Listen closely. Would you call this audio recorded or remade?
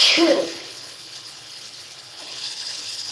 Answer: remade